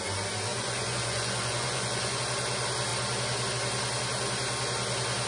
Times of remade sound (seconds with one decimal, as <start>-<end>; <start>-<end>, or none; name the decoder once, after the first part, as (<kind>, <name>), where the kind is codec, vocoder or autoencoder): 0.5-2.2 (vocoder, Vocos)